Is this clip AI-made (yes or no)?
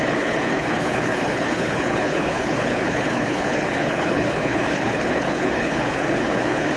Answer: yes